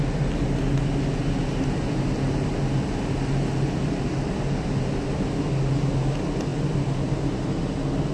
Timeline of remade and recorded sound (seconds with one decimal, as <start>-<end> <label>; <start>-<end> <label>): 0.0-8.1 recorded